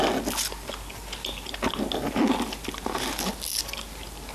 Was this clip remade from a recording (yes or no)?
no